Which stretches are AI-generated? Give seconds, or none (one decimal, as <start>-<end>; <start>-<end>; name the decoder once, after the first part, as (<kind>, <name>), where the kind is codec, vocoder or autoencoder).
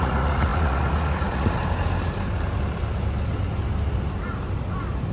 0.0-1.6 (vocoder, Vocos)